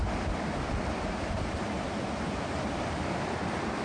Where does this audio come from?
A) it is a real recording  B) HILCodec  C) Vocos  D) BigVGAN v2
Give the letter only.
D